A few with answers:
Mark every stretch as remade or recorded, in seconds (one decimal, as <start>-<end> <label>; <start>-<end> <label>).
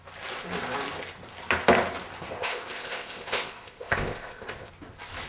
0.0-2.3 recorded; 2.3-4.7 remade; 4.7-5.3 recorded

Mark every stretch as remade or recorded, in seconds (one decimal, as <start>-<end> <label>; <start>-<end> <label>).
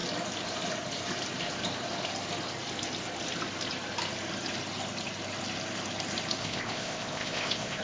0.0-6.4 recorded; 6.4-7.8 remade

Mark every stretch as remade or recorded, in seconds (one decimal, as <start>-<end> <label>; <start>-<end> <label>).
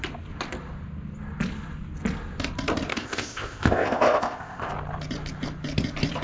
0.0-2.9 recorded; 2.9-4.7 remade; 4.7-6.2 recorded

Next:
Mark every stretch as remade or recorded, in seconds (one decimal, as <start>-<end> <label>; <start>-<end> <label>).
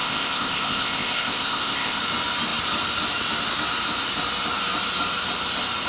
0.0-2.0 remade; 2.0-5.9 recorded